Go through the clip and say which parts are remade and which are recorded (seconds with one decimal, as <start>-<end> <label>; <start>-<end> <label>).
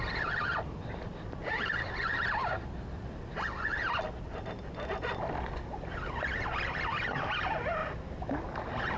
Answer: 0.0-9.0 recorded